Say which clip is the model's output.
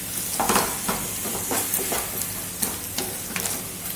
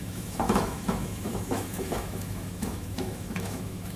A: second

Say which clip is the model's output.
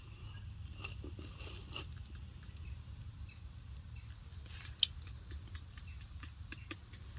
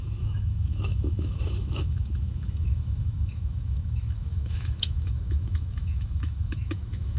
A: second